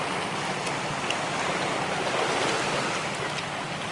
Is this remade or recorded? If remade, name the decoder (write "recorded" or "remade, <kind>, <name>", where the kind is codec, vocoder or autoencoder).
recorded